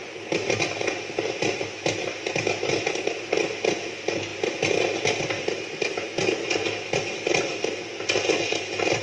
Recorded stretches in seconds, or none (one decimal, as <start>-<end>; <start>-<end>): 0.0-9.0